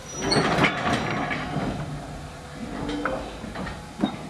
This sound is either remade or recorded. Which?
recorded